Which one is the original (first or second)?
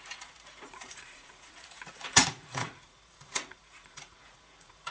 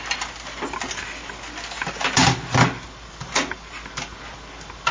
second